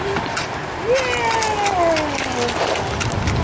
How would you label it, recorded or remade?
remade